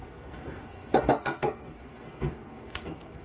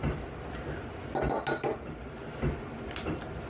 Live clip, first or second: second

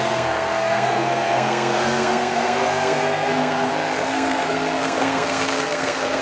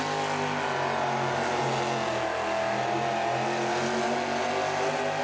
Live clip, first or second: second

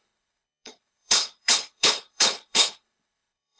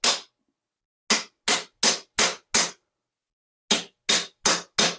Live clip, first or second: second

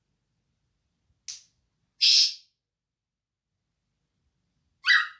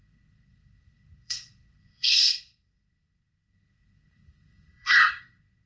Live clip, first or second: first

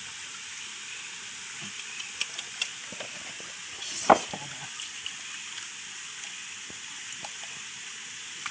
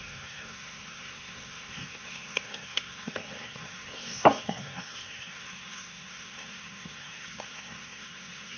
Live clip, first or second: first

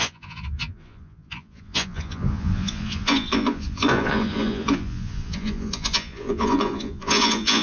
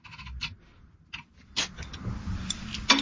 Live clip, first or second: second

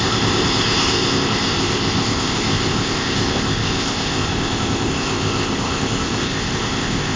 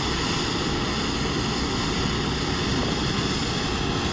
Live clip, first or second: second